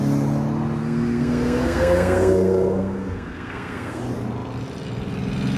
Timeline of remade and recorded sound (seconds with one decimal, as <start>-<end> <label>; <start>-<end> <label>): 0.0-0.8 recorded; 0.8-4.0 remade; 4.0-5.6 recorded